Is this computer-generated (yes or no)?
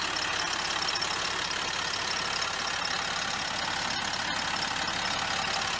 no